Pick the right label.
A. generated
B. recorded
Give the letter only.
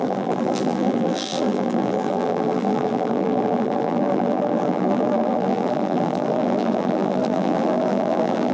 A